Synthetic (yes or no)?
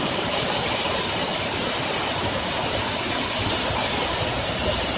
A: no